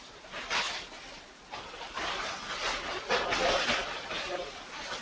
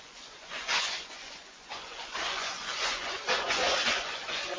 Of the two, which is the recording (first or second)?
first